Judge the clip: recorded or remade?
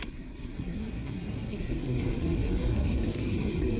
remade